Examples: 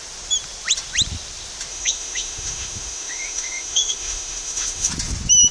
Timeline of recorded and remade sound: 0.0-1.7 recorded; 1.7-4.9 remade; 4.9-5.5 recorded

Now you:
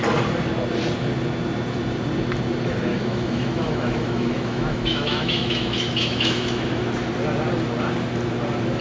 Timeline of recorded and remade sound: 0.0-2.9 recorded; 2.9-6.8 remade; 6.8-8.8 recorded

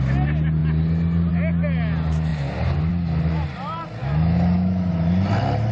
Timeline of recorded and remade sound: 0.0-4.0 recorded; 4.0-5.1 remade; 5.1-5.7 recorded

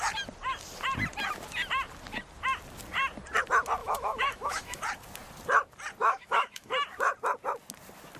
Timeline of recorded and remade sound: 0.0-3.8 recorded; 3.8-4.8 remade; 4.8-6.0 recorded; 6.0-6.7 remade; 6.7-8.2 recorded

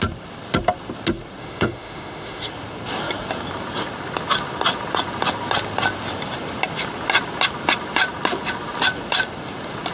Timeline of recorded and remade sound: 0.0-1.4 recorded; 1.4-2.5 remade; 2.5-9.9 recorded

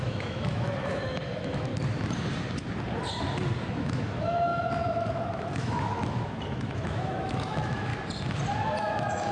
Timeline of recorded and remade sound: 0.0-1.7 remade; 1.7-3.7 recorded; 3.7-7.9 remade; 7.9-8.8 recorded; 8.8-9.3 remade